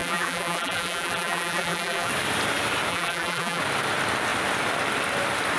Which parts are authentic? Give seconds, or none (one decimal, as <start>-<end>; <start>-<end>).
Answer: 2.1-2.9; 3.6-5.6